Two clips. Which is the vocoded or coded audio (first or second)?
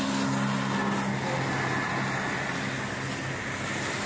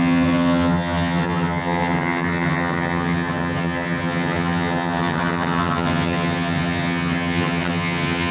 second